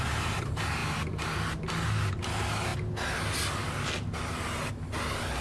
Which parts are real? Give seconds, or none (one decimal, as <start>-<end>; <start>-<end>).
0.0-5.4